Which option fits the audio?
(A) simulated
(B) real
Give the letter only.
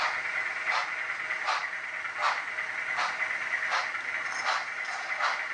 B